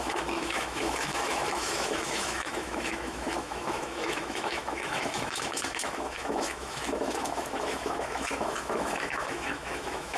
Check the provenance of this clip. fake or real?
fake